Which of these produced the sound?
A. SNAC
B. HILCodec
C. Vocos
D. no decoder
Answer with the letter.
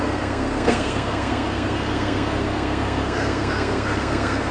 A